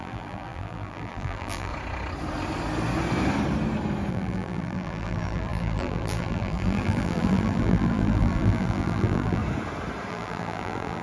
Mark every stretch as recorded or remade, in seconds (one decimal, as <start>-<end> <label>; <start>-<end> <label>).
0.0-1.7 remade; 1.7-4.1 recorded; 4.1-9.4 remade; 9.4-10.1 recorded; 10.1-11.0 remade